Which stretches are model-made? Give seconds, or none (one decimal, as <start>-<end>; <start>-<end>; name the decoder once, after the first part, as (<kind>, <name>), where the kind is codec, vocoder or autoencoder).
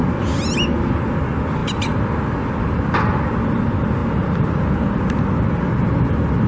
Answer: none